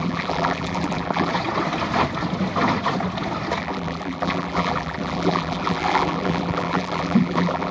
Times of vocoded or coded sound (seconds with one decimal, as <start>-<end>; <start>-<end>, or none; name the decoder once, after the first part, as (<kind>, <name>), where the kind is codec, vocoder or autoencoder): 0.0-1.3 (vocoder, BigVGAN v2); 3.6-7.7